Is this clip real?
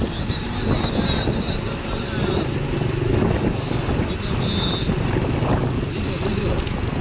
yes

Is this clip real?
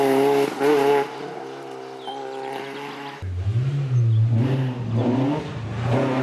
yes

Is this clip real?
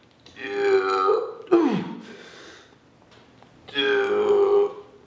yes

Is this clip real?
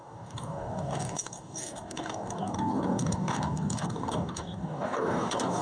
no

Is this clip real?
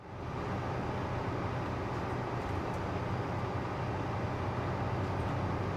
yes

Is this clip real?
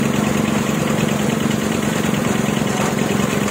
no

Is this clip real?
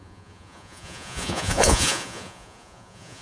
no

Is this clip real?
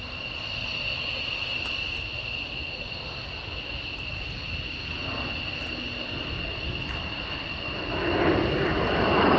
yes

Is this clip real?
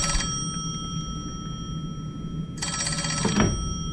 yes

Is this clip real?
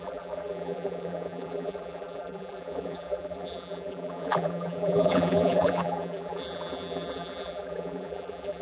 no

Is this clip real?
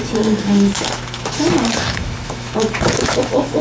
no